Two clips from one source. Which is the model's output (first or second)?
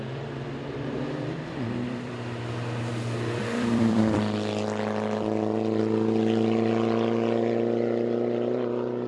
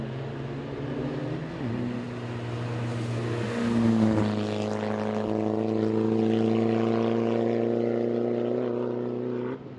first